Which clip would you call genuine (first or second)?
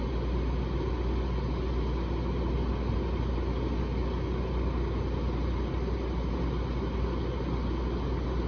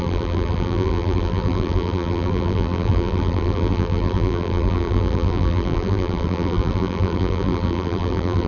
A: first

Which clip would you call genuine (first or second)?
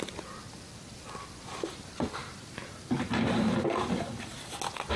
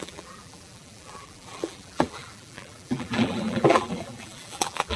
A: first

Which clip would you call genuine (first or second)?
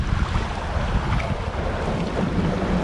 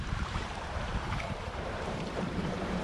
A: first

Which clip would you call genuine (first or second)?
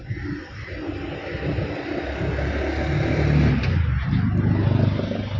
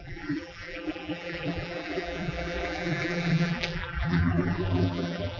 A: first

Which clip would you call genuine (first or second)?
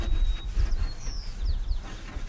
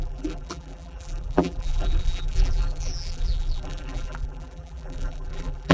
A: first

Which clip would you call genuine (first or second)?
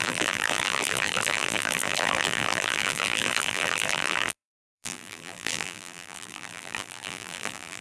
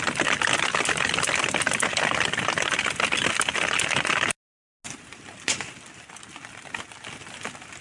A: second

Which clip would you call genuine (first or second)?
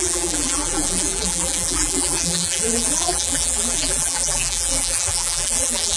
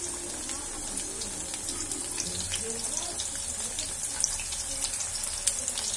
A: second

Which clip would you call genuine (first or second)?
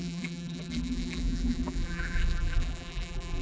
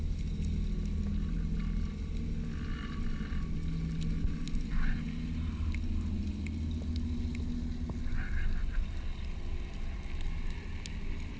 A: second